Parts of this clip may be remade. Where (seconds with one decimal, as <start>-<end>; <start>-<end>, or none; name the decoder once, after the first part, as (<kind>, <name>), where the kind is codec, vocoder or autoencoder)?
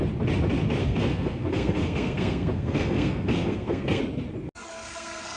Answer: 0.8-4.0 (codec, SNAC); 4.7-5.4